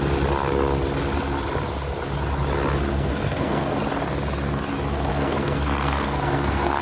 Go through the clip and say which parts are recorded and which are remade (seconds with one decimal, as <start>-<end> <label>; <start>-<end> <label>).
0.0-2.9 recorded; 2.9-3.8 remade; 3.8-5.1 recorded; 5.1-6.8 remade